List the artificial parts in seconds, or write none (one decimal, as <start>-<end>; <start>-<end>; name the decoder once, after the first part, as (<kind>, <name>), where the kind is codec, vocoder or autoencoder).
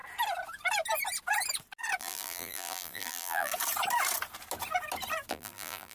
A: 2.0-3.5 (vocoder, BigVGAN v2); 5.3-5.9